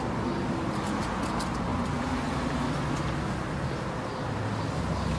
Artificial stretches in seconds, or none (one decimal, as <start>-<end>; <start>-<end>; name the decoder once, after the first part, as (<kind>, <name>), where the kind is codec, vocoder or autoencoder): none

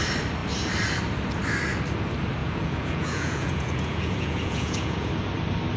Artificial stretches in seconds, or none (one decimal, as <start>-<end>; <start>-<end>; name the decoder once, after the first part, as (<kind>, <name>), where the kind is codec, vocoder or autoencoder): 2.4-5.1 (vocoder, Vocos)

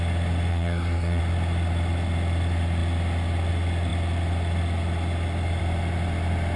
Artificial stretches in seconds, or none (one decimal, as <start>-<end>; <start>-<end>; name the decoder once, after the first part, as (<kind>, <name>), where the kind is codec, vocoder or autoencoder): 0.5-1.2 (codec, SNAC)

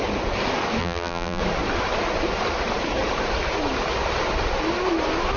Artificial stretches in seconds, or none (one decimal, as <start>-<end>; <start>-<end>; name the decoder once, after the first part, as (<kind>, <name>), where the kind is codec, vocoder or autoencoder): 0.8-1.4 (vocoder, BigVGAN v2)

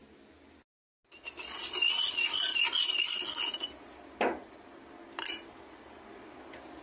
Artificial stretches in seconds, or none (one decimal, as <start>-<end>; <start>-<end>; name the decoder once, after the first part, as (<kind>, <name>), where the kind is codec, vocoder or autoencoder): none

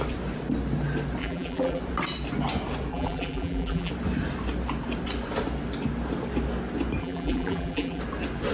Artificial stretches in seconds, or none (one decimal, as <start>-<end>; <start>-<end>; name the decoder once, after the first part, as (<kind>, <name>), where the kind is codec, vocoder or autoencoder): 1.2-1.8 (vocoder, BigVGAN v2); 2.9-3.9; 7.0-8.0

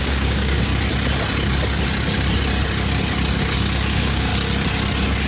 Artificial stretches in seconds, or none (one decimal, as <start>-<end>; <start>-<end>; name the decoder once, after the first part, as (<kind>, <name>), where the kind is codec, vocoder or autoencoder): 0.0-0.7 (codec, DAC); 3.9-4.3